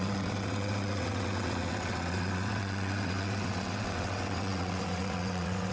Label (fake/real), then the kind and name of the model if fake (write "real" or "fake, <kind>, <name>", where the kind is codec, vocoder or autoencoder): fake, vocoder, WaveNeXt